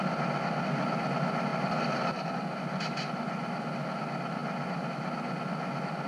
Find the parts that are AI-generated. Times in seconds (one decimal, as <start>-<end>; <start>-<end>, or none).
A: none